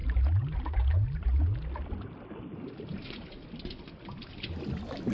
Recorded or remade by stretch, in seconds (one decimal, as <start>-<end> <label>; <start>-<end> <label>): 0.0-5.1 recorded